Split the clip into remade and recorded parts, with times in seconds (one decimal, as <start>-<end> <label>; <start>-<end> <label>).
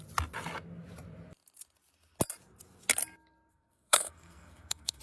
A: 0.0-3.5 recorded; 3.5-5.0 remade